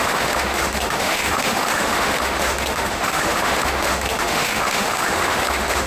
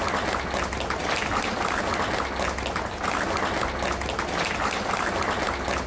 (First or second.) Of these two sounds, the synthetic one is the first